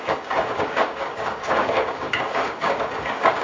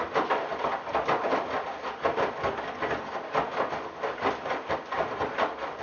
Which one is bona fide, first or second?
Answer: second